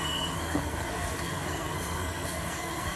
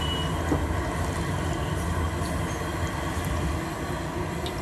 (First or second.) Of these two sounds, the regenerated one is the first